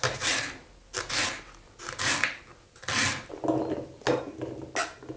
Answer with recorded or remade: recorded